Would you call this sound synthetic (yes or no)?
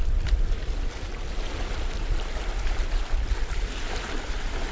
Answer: yes